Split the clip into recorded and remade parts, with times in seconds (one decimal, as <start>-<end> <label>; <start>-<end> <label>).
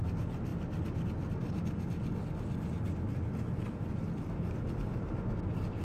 0.0-5.8 recorded